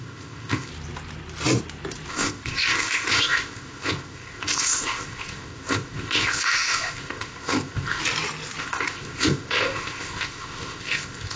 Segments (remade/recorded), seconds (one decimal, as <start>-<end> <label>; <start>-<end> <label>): 0.0-0.7 remade; 0.7-2.1 recorded; 2.1-8.0 remade; 8.0-8.6 recorded; 8.6-11.4 remade